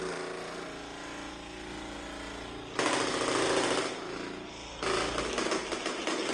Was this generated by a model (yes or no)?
no